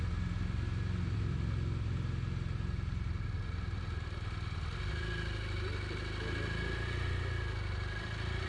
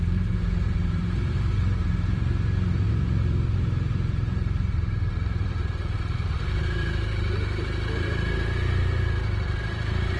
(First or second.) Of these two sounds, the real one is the first